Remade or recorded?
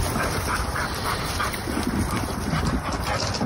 remade